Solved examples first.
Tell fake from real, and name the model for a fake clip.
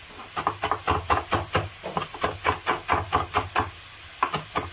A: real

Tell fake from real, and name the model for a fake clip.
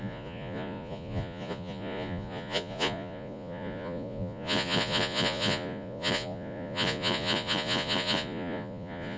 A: fake, vocoder, Vocos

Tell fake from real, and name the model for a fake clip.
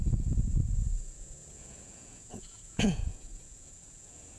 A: fake, vocoder, Vocos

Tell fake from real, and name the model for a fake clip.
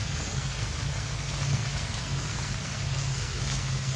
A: fake, codec, SNAC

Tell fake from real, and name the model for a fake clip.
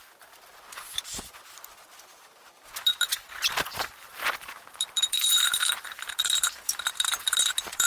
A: fake, vocoder, BigVGAN v2